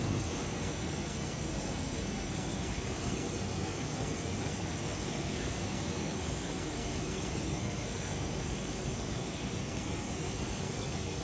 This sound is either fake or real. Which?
fake